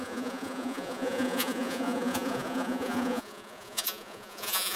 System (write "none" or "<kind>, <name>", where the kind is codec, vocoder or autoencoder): vocoder, Vocos